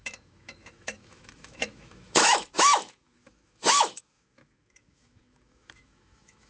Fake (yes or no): yes